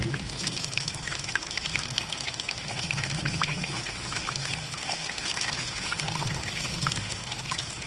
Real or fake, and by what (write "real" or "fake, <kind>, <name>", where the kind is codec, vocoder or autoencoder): fake, autoencoder, DAC-VAE